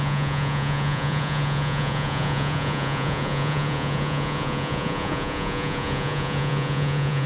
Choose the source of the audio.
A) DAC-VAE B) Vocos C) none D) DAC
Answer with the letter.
B